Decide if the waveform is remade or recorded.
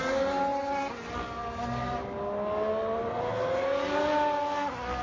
recorded